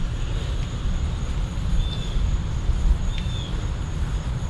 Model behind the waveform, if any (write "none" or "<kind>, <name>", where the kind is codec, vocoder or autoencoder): none